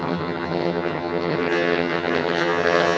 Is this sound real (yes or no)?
no